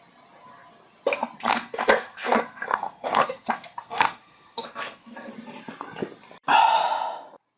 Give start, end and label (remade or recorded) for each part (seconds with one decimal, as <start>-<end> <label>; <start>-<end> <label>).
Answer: 0.0-1.5 recorded; 1.5-5.3 remade; 5.3-7.6 recorded